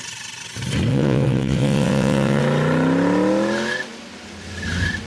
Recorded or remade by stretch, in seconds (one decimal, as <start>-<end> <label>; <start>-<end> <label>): 0.0-0.9 recorded; 0.9-2.4 remade; 2.4-5.1 recorded